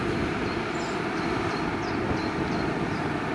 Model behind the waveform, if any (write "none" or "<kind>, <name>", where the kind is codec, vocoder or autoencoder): none